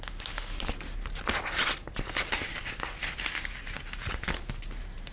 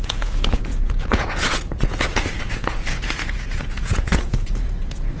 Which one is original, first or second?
first